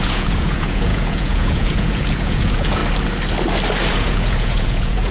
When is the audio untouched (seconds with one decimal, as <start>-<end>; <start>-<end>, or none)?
2.8-3.9

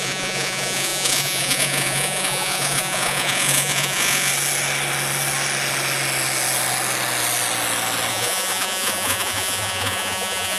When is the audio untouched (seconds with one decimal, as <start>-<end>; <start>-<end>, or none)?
4.3-8.1

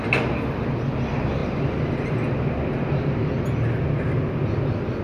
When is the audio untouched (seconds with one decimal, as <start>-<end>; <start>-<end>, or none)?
0.0-5.0

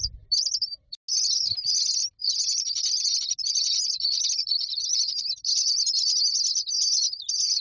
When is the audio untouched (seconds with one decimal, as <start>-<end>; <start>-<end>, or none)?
0.0-7.6

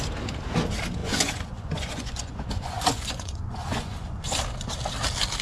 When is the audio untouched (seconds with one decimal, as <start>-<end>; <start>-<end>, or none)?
0.0-1.0; 4.2-5.4

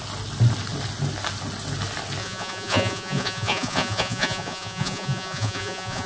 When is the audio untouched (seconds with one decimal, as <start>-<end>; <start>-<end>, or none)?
0.0-2.2

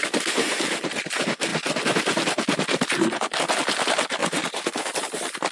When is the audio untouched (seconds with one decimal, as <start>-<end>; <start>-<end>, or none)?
0.0-5.5

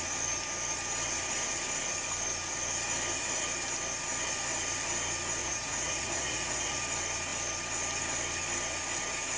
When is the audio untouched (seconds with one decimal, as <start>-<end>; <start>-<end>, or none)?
0.0-5.4; 6.8-9.4